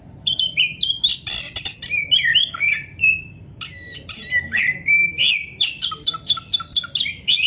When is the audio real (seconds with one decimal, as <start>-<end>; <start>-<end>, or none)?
0.0-7.5